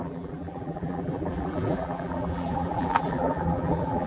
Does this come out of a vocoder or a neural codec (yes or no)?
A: yes